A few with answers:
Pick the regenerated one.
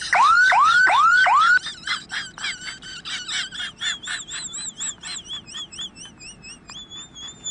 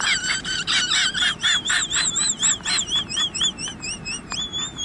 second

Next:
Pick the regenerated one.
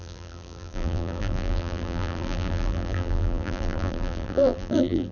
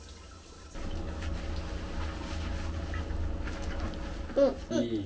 first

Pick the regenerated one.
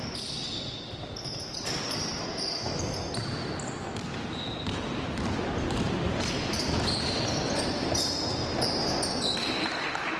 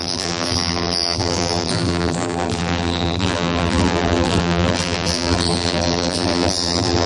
second